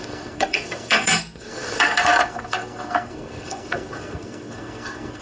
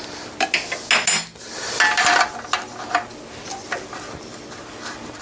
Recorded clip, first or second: second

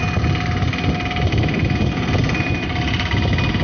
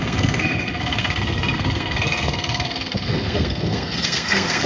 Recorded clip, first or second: first